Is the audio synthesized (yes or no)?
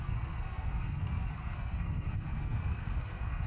yes